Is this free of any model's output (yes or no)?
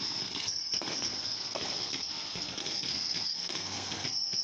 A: no